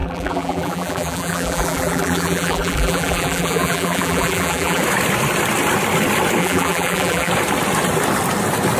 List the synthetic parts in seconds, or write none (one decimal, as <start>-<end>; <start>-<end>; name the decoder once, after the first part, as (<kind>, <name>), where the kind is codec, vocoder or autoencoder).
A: 0.0-4.8 (vocoder, BigVGAN v2); 6.4-7.3